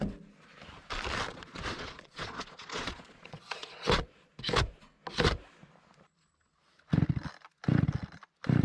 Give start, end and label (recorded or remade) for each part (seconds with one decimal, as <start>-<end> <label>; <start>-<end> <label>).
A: 0.0-1.3 recorded; 1.3-4.3 remade; 4.3-8.6 recorded